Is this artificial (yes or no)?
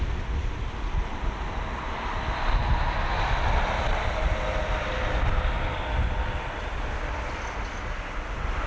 no